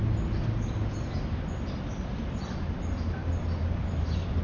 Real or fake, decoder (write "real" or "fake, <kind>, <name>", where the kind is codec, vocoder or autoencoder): real